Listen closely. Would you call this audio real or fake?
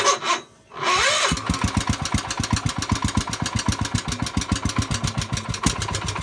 real